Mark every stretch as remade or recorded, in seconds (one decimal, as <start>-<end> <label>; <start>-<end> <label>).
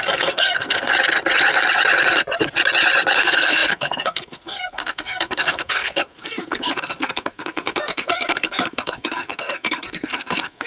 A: 0.0-0.9 remade; 0.9-3.2 recorded; 3.2-10.7 remade